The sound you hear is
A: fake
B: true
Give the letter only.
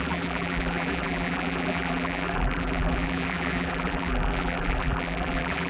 A